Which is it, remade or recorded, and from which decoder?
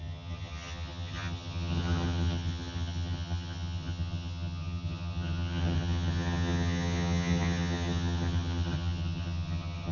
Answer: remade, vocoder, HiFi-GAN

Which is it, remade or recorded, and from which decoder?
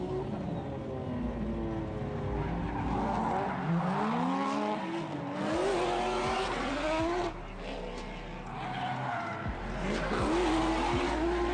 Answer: recorded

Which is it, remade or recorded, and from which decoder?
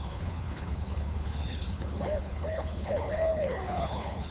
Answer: remade, codec, HILCodec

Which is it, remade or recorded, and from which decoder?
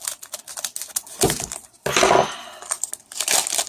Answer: recorded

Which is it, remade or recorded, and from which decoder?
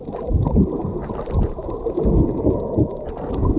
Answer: recorded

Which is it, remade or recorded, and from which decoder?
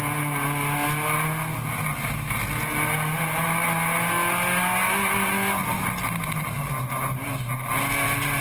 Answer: recorded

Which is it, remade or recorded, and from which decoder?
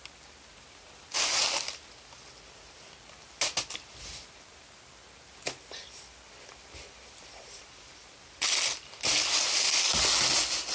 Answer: recorded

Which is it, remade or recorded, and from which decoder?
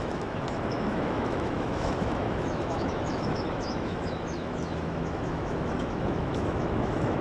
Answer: remade, autoencoder, DAC-VAE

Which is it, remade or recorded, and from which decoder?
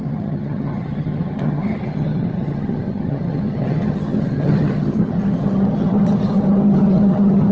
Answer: remade, vocoder, HiFi-GAN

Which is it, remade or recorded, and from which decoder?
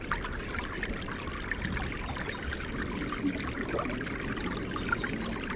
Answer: recorded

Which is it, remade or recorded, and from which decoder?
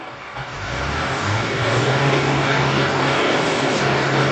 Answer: remade, codec, DAC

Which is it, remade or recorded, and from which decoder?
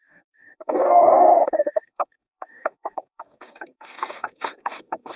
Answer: remade, codec, DAC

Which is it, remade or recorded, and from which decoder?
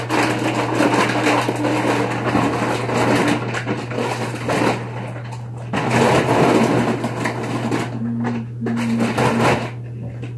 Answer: recorded